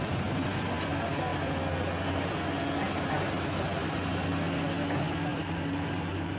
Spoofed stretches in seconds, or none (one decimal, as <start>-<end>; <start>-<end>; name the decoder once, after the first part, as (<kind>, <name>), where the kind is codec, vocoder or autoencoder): 5.3-6.4 (vocoder, BigVGAN v2)